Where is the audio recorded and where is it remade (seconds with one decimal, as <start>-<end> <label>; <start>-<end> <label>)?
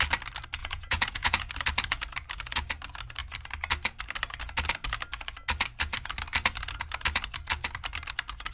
0.0-0.6 recorded; 0.6-1.5 remade; 1.5-8.5 recorded